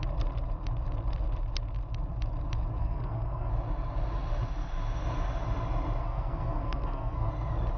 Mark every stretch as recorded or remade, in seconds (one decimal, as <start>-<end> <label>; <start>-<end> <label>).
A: 0.0-2.8 recorded; 2.8-3.5 remade; 3.5-6.0 recorded; 6.0-7.3 remade; 7.3-7.8 recorded